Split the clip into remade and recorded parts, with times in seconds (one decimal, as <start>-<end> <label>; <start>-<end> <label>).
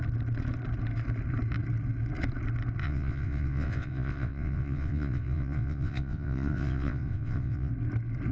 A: 0.0-2.8 recorded; 2.8-7.7 remade; 7.7-8.3 recorded